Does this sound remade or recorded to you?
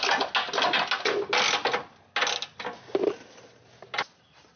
recorded